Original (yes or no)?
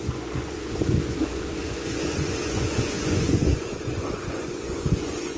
no